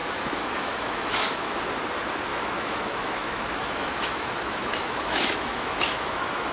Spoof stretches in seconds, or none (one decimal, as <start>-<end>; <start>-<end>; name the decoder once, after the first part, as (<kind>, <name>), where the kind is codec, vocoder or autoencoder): 0.0-1.6 (autoencoder, DAC-VAE); 2.3-6.5

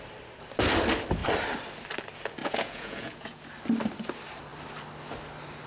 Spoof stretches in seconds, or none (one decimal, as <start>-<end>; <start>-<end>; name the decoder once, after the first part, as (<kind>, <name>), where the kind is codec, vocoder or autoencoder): 2.4-3.4 (vocoder, Vocos)

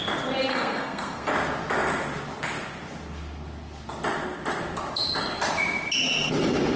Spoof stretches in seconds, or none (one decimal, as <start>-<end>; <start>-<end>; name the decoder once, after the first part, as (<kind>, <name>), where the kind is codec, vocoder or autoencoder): 0.5-1.3 (codec, SNAC)

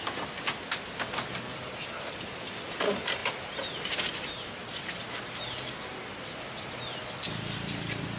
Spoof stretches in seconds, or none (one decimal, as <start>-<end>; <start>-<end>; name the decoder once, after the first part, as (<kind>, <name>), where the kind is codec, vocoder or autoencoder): none

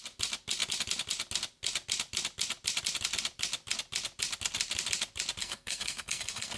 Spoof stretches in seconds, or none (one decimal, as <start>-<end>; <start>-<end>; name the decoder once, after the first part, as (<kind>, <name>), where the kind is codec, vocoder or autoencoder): 5.4-6.6 (codec, SNAC)

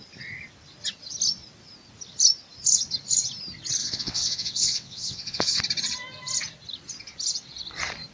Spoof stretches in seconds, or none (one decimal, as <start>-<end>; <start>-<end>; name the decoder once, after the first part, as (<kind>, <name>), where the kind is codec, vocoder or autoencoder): 3.8-5.6 (vocoder, WaveNeXt)